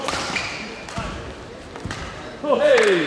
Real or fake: fake